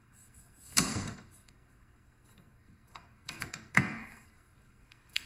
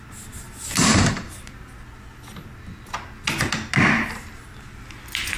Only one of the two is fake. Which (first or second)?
first